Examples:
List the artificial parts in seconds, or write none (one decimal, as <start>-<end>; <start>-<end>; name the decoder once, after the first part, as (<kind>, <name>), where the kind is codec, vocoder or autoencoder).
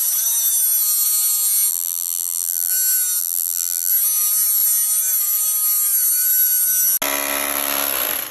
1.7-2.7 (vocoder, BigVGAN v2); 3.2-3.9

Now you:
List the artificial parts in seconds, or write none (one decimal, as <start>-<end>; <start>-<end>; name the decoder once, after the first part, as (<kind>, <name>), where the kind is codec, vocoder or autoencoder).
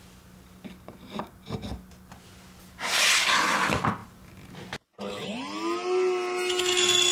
none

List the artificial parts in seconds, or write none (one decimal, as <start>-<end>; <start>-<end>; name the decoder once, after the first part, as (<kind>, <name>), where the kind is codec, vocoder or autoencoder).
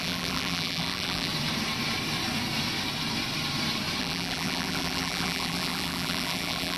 0.0-1.3 (vocoder, BigVGAN v2); 4.0-6.8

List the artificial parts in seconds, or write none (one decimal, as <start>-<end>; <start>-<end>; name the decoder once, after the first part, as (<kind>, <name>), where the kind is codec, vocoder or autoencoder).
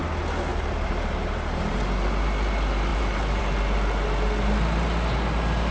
0.5-1.8 (vocoder, BigVGAN v2); 2.9-3.4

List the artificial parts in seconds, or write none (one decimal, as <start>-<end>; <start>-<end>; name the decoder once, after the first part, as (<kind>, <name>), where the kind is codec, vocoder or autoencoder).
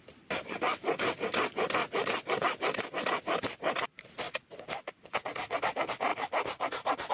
0.0-7.1 (vocoder, BigVGAN v2)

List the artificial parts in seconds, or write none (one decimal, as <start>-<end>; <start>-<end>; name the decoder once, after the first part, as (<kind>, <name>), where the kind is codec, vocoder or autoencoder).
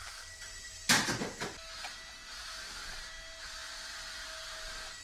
none